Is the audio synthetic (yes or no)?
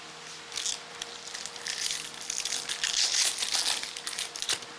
no